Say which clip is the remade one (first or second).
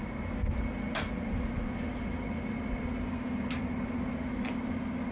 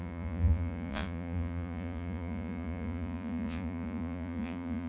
second